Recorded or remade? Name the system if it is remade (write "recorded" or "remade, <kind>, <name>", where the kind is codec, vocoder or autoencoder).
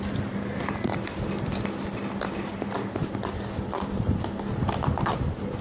recorded